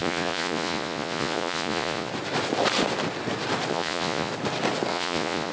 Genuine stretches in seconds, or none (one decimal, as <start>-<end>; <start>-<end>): 2.1-3.7; 4.3-4.9